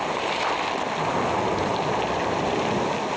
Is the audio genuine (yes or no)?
yes